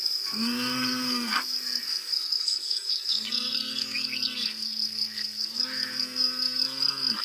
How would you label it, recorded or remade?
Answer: remade